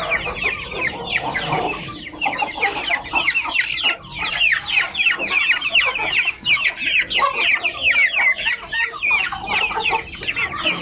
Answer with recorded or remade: recorded